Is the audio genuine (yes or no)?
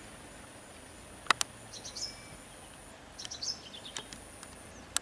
yes